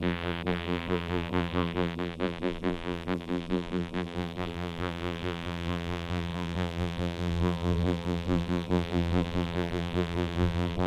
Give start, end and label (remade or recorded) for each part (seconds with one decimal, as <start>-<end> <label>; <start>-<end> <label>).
0.0-10.9 remade